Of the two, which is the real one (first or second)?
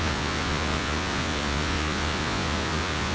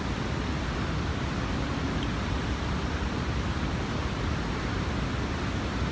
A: second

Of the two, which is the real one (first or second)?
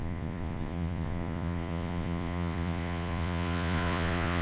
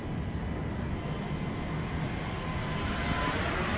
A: second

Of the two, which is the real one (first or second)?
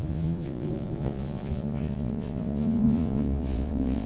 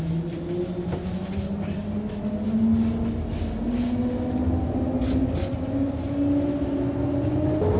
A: second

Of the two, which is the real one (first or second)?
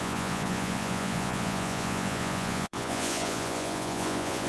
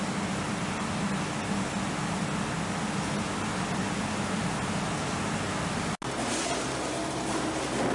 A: second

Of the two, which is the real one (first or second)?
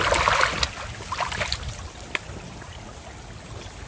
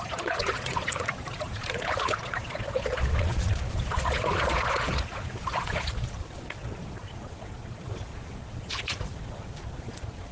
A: first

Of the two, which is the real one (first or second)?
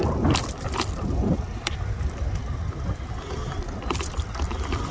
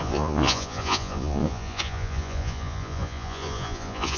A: first